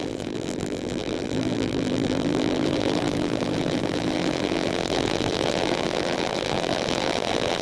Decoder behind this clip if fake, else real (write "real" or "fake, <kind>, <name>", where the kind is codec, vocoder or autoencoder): fake, vocoder, BigVGAN v2